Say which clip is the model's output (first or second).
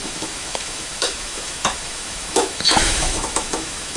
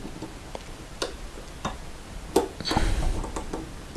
first